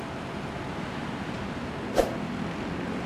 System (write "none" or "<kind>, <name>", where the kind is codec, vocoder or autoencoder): none